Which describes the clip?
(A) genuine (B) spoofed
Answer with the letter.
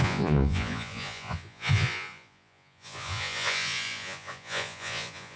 B